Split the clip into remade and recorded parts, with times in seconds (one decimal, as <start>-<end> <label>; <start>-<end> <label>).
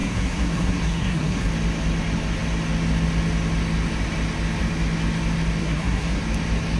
0.0-1.5 remade; 1.5-5.6 recorded; 5.6-6.2 remade; 6.2-6.8 recorded